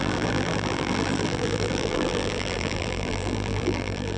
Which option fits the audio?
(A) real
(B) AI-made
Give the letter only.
B